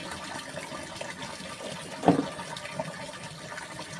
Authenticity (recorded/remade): recorded